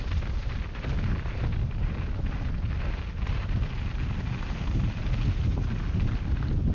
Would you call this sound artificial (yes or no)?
no